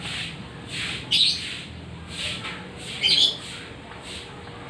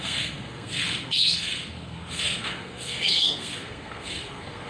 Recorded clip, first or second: first